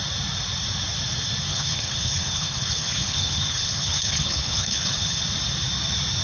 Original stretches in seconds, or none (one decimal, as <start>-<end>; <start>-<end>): 0.0-1.5; 5.2-6.2